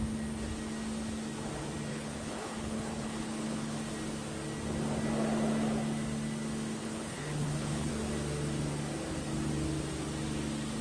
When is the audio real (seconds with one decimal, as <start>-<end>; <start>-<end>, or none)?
0.0-1.9; 3.8-6.8; 7.9-10.8